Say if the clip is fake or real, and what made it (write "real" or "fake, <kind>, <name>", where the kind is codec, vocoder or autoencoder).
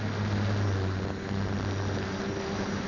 real